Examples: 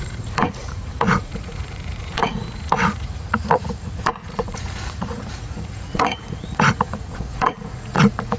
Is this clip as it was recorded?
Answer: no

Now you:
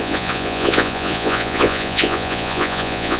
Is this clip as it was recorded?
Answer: no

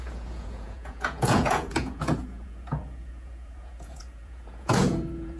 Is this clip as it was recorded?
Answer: no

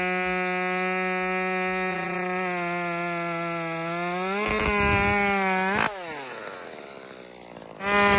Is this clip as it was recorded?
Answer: yes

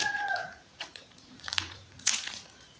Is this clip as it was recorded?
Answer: no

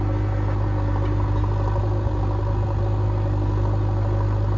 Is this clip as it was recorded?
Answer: yes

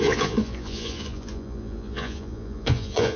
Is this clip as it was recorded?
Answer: no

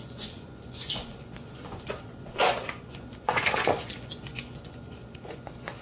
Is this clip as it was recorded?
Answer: no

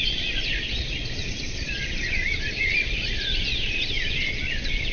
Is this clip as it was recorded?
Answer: no